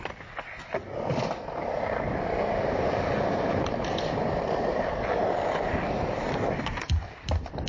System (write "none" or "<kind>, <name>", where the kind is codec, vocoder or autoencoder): none